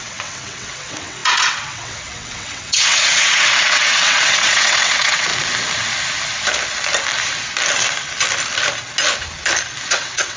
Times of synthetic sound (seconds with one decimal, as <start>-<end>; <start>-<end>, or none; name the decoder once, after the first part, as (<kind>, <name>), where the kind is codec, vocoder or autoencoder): 0.0-5.3 (vocoder, WaveNeXt); 9.9-10.4